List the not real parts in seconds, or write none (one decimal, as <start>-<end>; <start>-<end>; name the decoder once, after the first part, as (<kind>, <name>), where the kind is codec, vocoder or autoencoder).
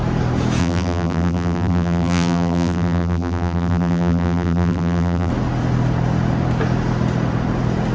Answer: 0.6-5.3 (vocoder, BigVGAN v2)